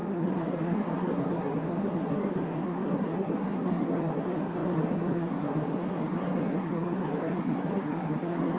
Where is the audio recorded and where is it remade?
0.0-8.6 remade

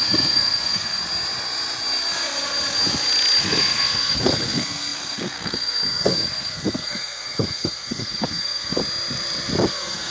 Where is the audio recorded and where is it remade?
0.0-1.0 remade; 1.0-3.4 recorded; 3.4-8.8 remade; 8.8-9.7 recorded; 9.7-10.1 remade

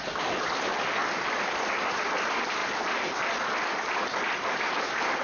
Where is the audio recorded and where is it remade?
0.0-5.2 recorded